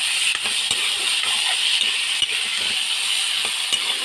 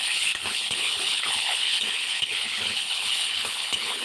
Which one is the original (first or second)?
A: first